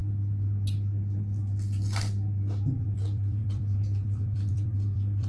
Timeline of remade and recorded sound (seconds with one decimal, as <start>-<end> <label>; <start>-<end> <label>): 0.0-2.7 recorded; 2.7-5.3 remade